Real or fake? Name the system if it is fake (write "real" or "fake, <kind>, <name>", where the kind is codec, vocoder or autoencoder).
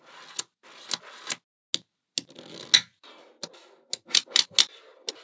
real